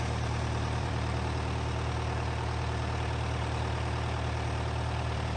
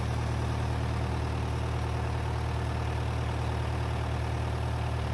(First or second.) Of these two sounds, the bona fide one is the second